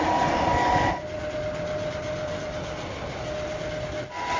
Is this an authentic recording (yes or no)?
yes